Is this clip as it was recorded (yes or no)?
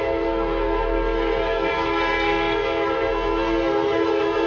no